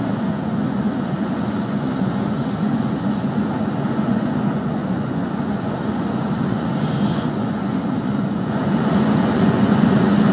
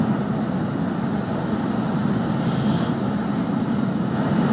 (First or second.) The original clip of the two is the second